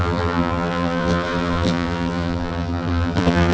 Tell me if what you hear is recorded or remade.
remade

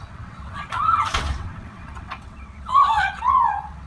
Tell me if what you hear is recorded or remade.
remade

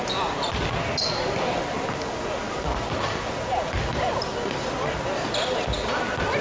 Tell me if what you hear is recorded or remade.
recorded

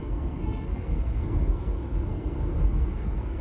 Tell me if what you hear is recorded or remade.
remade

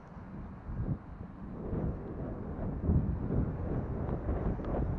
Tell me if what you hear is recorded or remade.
recorded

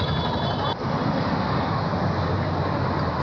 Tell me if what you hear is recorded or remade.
recorded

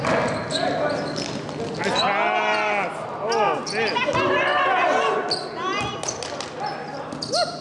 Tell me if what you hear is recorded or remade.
recorded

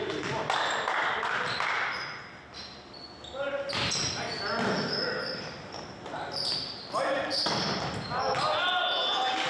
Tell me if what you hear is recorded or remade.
recorded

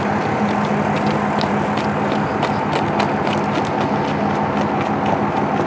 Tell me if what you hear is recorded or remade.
recorded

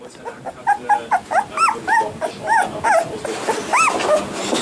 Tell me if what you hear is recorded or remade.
recorded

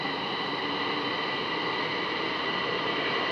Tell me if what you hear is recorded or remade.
recorded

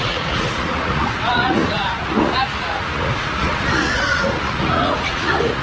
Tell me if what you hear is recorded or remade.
remade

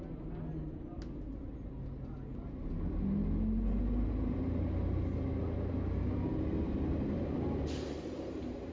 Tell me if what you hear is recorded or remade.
recorded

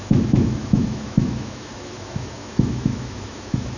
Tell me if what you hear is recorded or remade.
remade